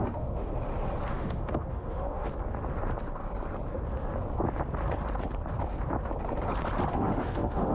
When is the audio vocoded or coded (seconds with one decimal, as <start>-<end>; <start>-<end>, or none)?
0.0-0.5; 1.1-2.3; 6.9-7.7